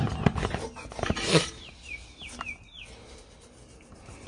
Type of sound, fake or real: real